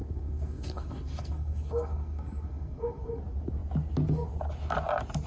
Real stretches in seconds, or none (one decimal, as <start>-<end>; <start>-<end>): 3.2-5.3